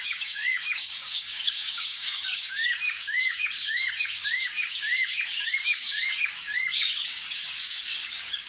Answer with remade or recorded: remade